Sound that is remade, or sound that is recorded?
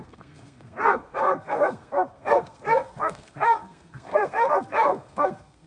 remade